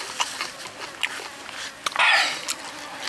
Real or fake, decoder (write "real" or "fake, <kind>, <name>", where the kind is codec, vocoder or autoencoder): real